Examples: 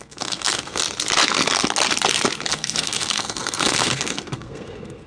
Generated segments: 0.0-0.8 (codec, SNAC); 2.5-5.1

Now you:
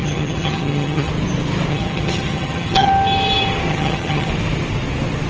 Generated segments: 0.0-1.1 (vocoder, HiFi-GAN); 1.7-2.9; 3.7-4.3

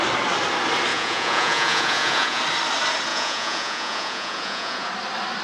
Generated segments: 0.9-2.4 (vocoder, Vocos); 3.1-4.9

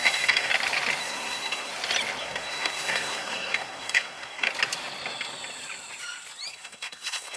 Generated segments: 0.0-0.5 (codec, SNAC); 1.0-1.7; 2.2-4.5; 6.5-7.4